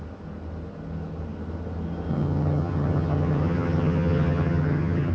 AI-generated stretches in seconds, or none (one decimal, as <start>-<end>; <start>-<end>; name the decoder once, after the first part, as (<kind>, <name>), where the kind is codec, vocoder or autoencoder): 2.1-5.1 (vocoder, HiFi-GAN)